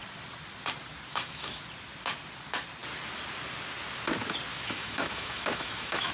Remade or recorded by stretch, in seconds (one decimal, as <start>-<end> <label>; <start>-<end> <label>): 0.0-1.1 recorded; 1.1-1.6 remade; 1.6-4.5 recorded; 4.5-6.1 remade